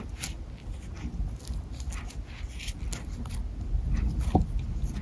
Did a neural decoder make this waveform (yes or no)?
no